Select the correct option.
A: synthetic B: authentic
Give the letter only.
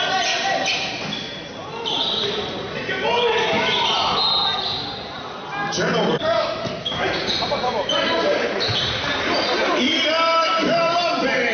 B